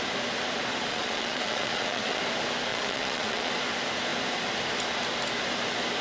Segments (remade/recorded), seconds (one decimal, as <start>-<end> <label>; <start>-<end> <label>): 0.0-0.9 recorded; 0.9-2.2 remade; 2.2-2.7 recorded; 2.7-3.5 remade; 3.5-6.0 recorded